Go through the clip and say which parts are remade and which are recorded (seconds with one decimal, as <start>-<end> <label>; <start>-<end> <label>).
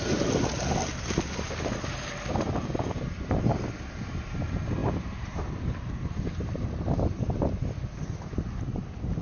0.0-4.8 recorded; 4.8-7.4 remade; 7.4-9.2 recorded